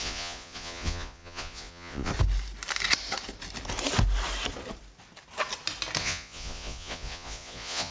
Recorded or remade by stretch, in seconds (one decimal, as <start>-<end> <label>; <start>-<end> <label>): 0.0-2.1 remade; 2.1-6.0 recorded; 6.0-7.9 remade